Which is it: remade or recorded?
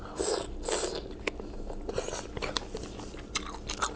recorded